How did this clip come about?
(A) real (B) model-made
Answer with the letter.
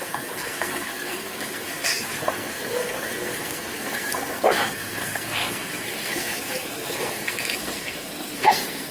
B